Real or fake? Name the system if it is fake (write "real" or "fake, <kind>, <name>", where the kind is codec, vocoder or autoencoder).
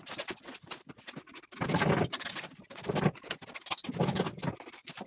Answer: real